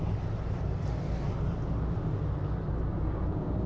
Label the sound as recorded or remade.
recorded